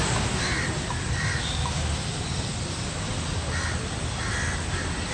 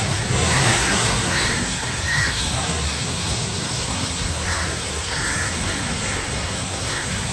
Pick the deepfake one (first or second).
second